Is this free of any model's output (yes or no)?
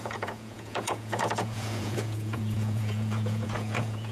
no